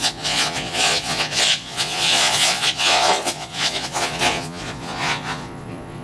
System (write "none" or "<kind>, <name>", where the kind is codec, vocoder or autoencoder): vocoder, Vocos